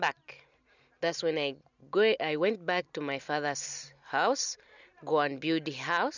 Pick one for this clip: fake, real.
real